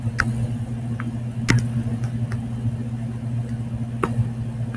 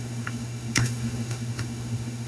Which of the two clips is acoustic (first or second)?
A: first